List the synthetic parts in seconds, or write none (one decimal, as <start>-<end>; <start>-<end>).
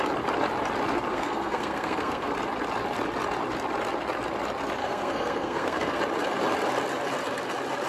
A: 1.1-2.3; 4.8-6.0